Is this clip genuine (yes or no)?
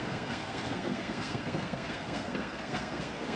no